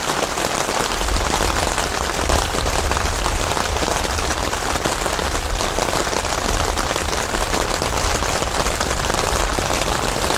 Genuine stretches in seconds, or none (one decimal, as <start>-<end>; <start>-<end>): 4.3-9.5